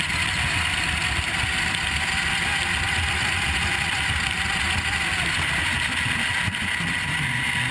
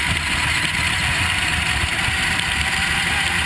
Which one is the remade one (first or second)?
second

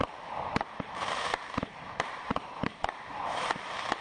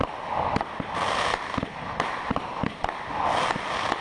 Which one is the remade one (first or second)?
first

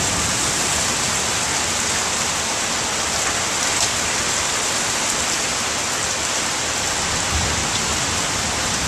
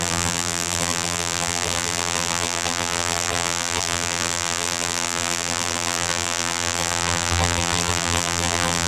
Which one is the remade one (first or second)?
second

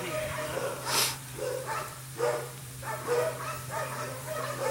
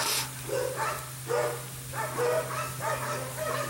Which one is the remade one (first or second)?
first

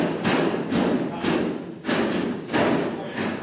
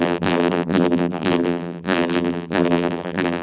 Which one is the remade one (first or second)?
second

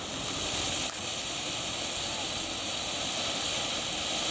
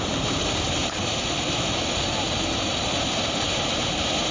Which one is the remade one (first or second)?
second